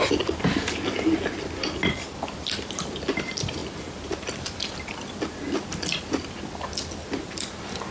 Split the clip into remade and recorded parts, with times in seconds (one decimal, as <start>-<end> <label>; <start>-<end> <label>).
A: 0.0-7.9 recorded